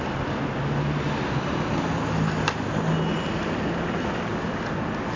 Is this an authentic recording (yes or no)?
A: yes